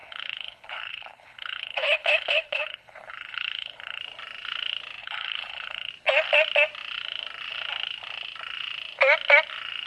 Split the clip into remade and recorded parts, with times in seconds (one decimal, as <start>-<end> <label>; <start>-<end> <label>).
0.0-4.0 remade; 4.0-5.0 recorded; 5.0-5.9 remade; 5.9-9.9 recorded